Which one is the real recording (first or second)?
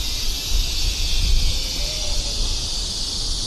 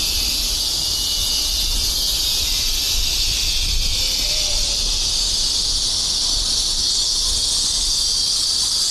first